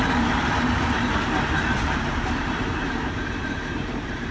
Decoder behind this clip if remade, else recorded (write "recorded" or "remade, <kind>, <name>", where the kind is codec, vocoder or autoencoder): remade, vocoder, BigVGAN v2